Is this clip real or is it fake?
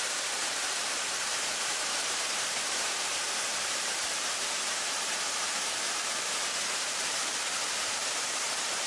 fake